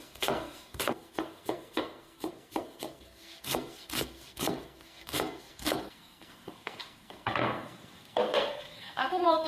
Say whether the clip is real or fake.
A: fake